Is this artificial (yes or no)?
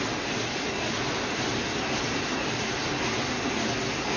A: no